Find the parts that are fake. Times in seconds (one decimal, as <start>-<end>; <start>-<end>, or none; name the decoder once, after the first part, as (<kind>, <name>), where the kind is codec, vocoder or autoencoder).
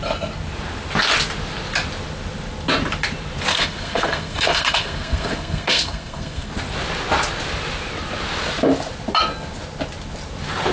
3.5-6.5 (codec, SNAC)